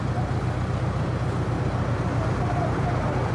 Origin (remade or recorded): recorded